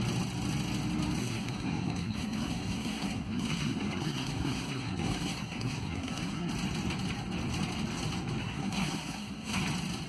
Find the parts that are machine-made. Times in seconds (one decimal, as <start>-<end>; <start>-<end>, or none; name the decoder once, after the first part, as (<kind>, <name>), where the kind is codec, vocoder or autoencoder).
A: 1.2-6.5 (codec, SNAC); 8.4-9.6